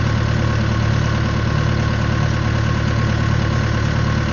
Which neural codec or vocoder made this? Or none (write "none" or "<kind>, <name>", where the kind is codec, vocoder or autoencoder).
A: none